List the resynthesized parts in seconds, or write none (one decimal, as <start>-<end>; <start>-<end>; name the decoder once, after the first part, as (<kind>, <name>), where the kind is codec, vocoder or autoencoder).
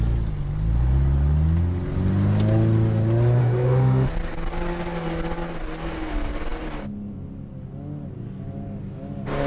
3.4-4.1 (autoencoder, DAC-VAE)